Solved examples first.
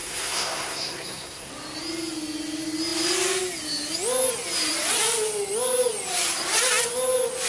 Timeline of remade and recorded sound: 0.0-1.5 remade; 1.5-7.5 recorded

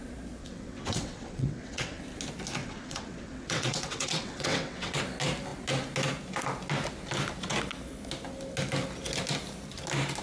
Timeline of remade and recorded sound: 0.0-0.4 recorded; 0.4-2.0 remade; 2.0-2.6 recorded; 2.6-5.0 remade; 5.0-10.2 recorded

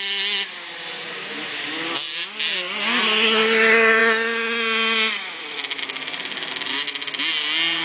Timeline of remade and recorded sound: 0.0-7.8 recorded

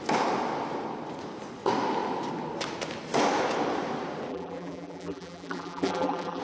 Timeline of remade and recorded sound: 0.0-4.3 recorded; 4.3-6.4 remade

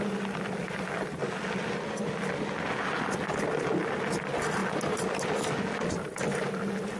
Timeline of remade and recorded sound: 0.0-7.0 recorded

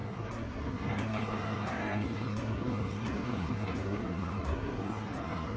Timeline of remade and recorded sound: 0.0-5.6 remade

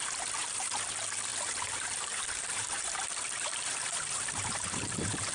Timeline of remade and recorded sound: 0.0-0.4 recorded; 0.4-0.9 remade; 0.9-1.3 recorded; 1.3-4.5 remade; 4.5-5.3 recorded

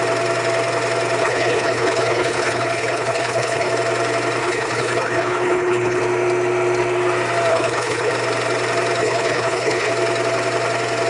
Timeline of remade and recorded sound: 0.0-1.2 recorded; 1.2-3.7 remade; 3.7-4.4 recorded; 4.4-6.0 remade; 6.0-7.5 recorded; 7.5-8.1 remade; 8.1-9.0 recorded; 9.0-9.9 remade; 9.9-11.1 recorded